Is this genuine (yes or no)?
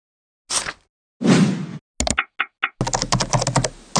yes